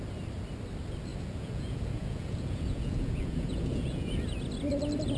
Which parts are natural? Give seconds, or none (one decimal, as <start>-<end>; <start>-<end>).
0.0-1.1; 4.2-5.2